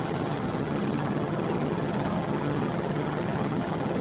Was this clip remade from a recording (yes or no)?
yes